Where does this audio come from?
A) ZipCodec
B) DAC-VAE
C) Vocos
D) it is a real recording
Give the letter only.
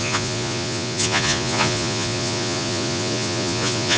C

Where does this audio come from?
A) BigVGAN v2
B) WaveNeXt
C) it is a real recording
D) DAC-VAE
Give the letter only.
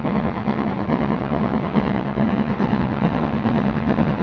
B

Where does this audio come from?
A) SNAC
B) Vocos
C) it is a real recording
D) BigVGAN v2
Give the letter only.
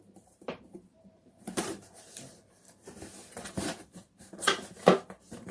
D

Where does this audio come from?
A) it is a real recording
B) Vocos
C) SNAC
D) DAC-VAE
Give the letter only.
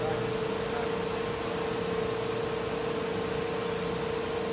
A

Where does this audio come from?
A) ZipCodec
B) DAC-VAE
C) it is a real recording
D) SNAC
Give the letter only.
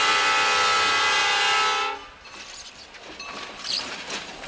C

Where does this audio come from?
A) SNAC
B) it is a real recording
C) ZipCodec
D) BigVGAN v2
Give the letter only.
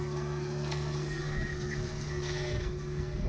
A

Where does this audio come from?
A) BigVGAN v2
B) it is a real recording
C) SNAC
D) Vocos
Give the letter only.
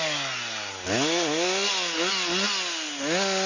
B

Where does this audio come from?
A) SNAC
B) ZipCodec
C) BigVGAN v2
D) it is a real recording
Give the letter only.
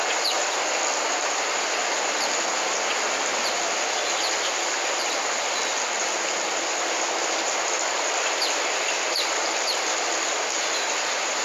D